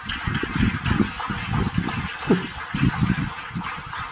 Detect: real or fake real